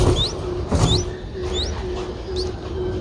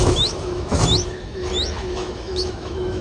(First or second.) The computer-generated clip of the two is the second